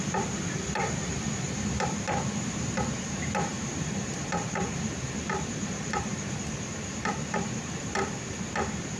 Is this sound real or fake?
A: fake